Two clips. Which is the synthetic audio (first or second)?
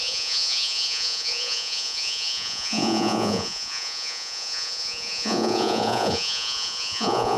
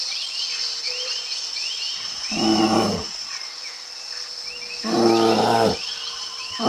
first